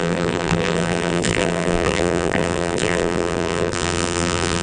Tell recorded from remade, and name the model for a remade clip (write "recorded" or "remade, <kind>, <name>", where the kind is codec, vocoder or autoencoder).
remade, vocoder, BigVGAN v2